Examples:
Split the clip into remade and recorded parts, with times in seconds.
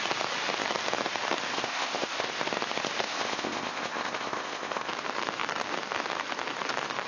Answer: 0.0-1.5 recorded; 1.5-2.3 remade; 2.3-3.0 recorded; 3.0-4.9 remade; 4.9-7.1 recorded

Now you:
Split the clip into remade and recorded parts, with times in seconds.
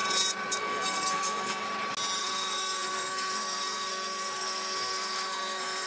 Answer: 0.0-0.6 recorded; 0.6-1.6 remade; 1.6-2.2 recorded; 2.2-5.9 remade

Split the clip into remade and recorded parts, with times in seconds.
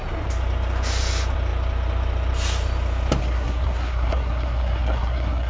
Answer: 0.0-3.2 recorded; 3.2-5.5 remade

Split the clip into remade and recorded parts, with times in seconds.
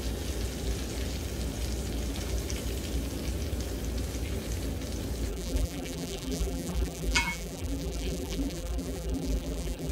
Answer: 0.0-5.3 recorded; 5.3-9.9 remade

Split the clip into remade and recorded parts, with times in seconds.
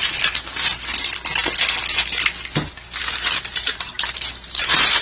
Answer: 0.0-3.0 recorded; 3.0-5.0 remade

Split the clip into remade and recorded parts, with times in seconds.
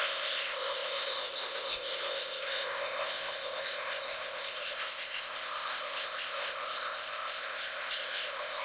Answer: 0.0-8.6 remade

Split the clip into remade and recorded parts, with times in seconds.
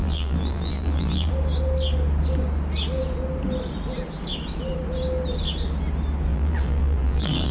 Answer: 0.0-1.3 remade; 1.3-6.3 recorded; 6.3-7.5 remade